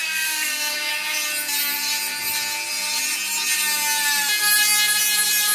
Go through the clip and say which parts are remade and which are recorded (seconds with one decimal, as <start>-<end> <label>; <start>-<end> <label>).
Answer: 0.0-0.9 remade; 0.9-5.5 recorded